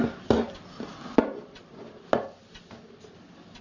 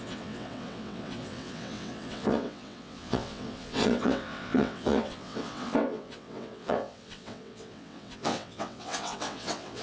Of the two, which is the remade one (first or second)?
second